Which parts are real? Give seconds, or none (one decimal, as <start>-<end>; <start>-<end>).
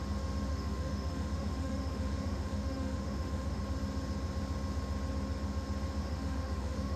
0.0-0.5; 3.6-6.0